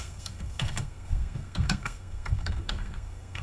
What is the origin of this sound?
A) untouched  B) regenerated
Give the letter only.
B